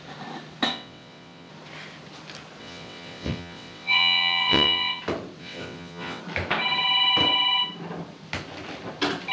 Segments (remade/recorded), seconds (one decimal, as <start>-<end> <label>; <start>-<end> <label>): 0.0-0.7 recorded; 0.7-1.5 remade; 1.5-2.6 recorded; 2.6-5.0 remade; 5.0-5.4 recorded; 5.4-6.2 remade; 6.2-9.3 recorded